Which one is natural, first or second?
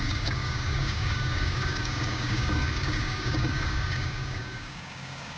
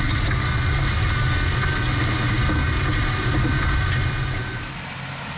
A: second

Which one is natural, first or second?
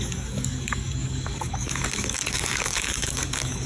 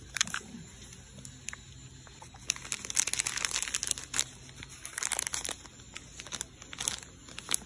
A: second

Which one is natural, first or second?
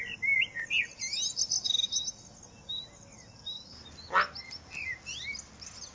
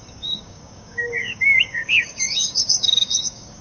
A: first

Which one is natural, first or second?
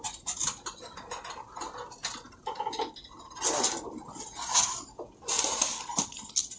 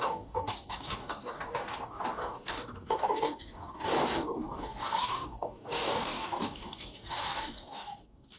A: first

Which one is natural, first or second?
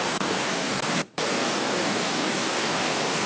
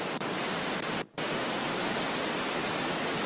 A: second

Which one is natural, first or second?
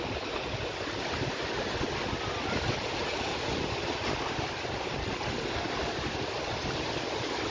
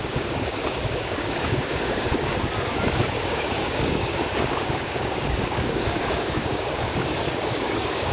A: first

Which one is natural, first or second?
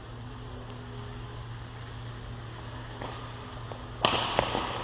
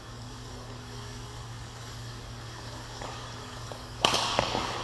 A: first